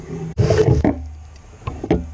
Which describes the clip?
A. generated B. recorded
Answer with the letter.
B